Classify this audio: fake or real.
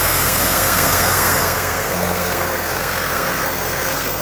fake